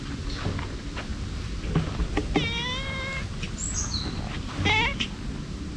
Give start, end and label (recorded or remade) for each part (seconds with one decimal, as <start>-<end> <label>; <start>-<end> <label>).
0.0-5.8 recorded